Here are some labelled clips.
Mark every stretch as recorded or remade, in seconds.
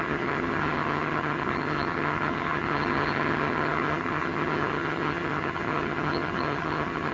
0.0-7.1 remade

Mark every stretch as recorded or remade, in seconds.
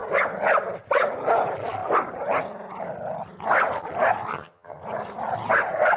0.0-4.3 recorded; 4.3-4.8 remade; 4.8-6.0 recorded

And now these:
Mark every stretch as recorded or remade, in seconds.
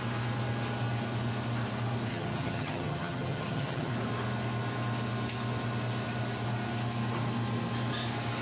0.0-2.1 recorded; 2.1-3.9 remade; 3.9-8.4 recorded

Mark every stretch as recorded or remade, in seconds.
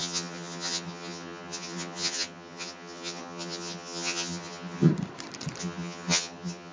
0.0-4.9 remade; 4.9-5.6 recorded; 5.6-6.7 remade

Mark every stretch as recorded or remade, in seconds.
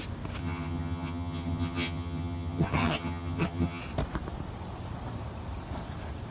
0.0-0.4 recorded; 0.4-3.8 remade; 3.8-6.3 recorded